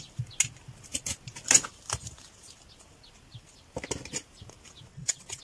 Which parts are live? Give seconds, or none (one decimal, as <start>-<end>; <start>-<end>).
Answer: 0.0-4.9